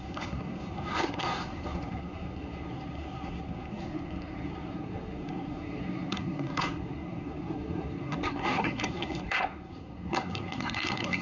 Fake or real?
fake